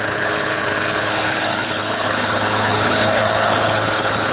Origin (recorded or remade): remade